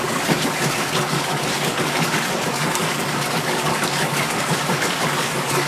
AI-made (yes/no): yes